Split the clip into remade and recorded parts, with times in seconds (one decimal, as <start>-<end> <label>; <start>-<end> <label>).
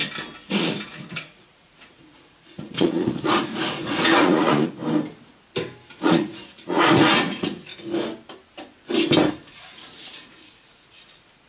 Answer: 0.0-0.5 recorded; 0.5-4.8 remade; 4.8-5.9 recorded; 5.9-7.7 remade; 7.7-9.3 recorded; 9.3-11.5 remade